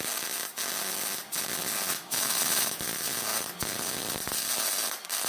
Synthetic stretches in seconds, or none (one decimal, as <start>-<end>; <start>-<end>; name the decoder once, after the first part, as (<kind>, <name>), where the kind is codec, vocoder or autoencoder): 1.9-2.8 (autoencoder, DAC-VAE)